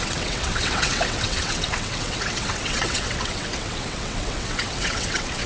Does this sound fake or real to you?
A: fake